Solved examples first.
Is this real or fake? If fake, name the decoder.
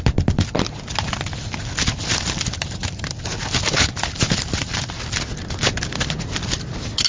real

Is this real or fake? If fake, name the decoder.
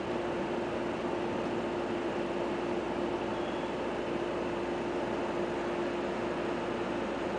real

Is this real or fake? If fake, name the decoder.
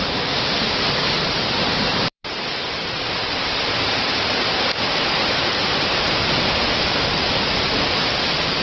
fake, vocoder, BigVGAN v2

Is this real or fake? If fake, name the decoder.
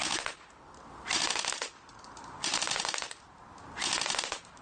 real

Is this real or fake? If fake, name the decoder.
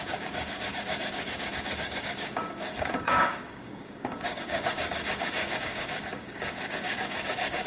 fake, codec, DAC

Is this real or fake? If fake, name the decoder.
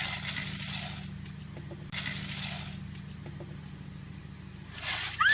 real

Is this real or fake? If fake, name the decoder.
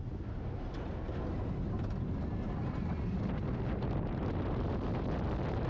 real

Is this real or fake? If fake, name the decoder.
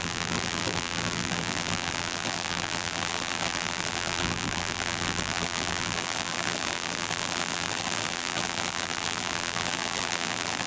fake, vocoder, BigVGAN v2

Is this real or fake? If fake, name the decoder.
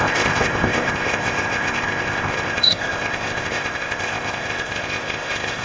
fake, codec, ZipCodec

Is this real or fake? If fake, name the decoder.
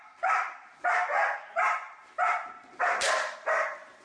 real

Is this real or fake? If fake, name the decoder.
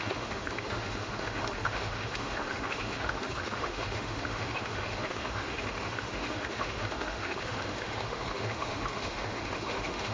fake, autoencoder, DAC-VAE